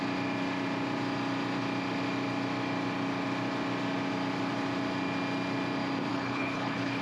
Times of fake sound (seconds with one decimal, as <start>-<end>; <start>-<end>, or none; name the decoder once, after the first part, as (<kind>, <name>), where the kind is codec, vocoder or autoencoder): 6.1-7.0 (codec, HILCodec)